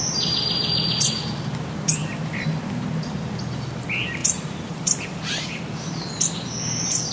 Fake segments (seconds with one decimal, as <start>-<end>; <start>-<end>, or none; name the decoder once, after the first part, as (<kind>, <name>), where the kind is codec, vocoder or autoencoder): 4.2-5.6 (vocoder, BigVGAN v2)